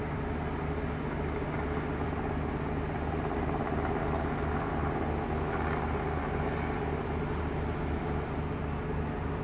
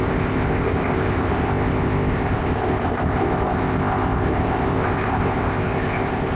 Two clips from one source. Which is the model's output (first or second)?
second